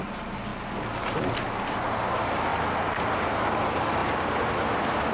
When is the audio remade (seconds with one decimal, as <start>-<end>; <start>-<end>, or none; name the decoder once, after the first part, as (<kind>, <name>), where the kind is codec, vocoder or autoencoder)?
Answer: none